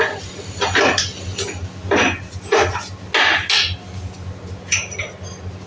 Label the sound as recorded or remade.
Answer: recorded